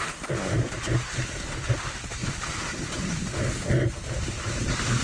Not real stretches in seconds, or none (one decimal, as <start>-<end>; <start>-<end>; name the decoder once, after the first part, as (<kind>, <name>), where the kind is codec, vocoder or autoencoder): none